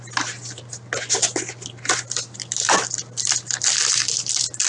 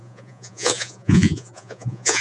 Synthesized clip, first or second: second